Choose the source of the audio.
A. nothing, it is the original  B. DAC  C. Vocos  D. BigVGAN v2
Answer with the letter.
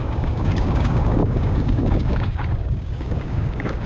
B